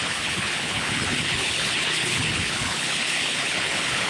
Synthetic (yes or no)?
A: yes